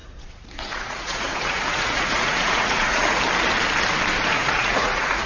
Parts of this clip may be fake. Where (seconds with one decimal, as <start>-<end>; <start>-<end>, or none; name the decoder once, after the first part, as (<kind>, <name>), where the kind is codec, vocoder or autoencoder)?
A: 0.0-3.2 (vocoder, Vocos); 4.3-5.3